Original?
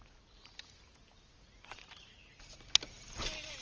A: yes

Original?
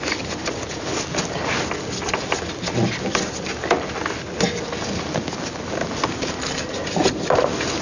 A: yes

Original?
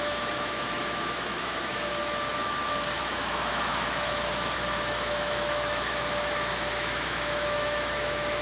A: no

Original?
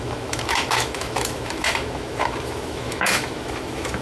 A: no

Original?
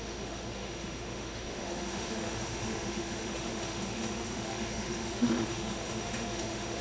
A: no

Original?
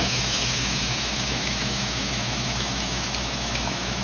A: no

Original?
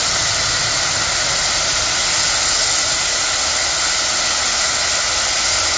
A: yes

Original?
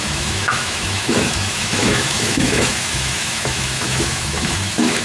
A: no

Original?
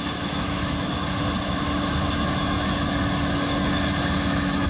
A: no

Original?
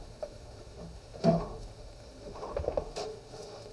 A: no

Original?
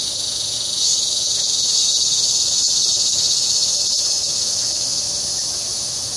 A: no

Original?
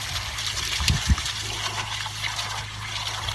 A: yes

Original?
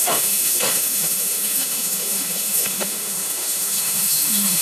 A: no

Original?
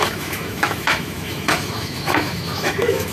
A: no